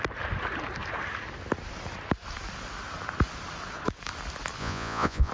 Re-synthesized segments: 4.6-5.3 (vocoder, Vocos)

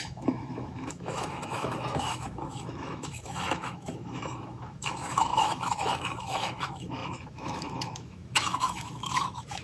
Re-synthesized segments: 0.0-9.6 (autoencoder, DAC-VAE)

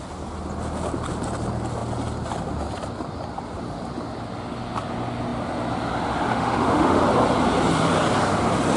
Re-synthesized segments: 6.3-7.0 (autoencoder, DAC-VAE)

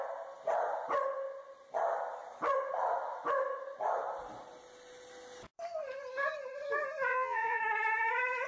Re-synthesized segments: 7.1-7.6 (vocoder, Vocos)

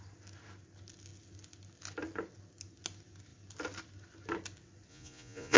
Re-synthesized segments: 4.9-5.6 (vocoder, Vocos)